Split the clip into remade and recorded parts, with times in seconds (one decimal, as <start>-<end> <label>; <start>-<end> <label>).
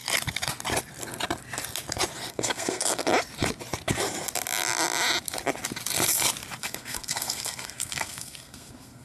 0.0-2.3 recorded; 2.3-3.1 remade; 3.1-6.6 recorded; 6.6-9.0 remade